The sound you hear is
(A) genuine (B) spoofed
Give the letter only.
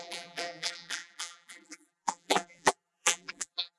B